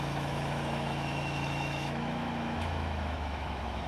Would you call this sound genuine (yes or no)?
no